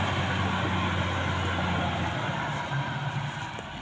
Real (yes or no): yes